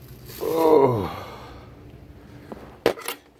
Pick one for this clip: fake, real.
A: real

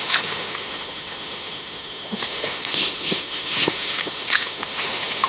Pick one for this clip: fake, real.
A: fake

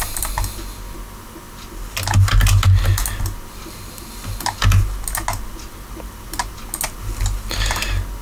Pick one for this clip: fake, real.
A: real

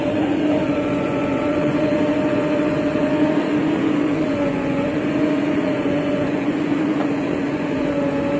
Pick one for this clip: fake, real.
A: fake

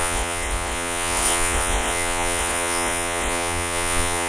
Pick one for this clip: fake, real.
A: fake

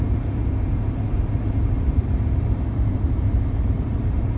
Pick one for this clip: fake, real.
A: fake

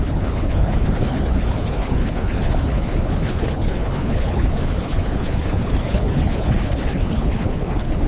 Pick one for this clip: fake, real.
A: fake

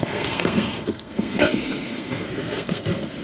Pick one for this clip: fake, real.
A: fake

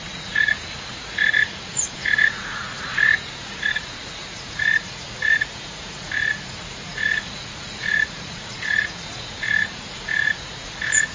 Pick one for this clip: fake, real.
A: fake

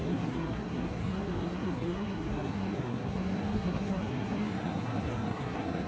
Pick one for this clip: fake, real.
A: fake